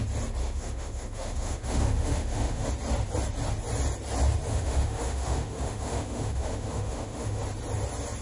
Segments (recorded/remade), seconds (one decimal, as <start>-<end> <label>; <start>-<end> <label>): 0.0-0.4 recorded; 0.4-2.7 remade; 2.7-4.5 recorded; 4.5-7.4 remade; 7.4-8.2 recorded